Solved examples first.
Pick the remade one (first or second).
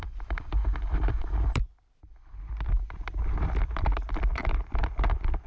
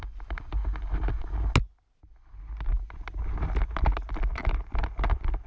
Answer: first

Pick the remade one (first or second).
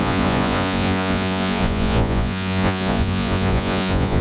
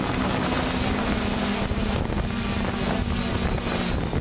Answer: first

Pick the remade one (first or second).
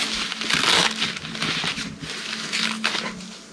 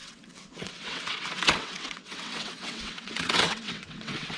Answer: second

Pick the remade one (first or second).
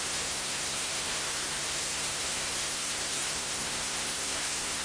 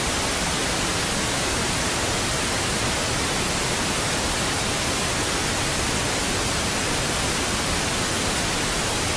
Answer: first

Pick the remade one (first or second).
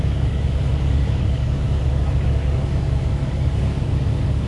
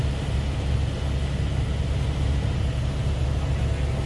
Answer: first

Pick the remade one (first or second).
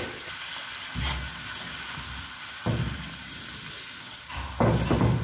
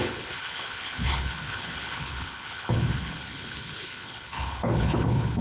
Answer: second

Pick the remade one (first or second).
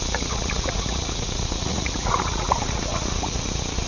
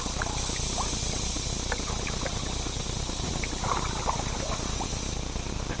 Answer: first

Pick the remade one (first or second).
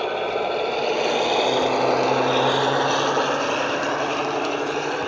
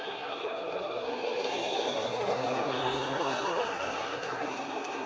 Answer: second